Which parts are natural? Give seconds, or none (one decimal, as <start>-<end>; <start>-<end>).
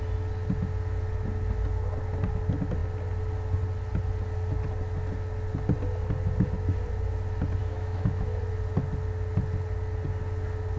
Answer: 0.0-7.6; 8.4-10.8